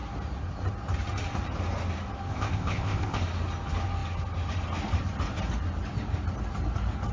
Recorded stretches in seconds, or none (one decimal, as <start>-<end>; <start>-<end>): 0.0-2.3; 3.2-7.1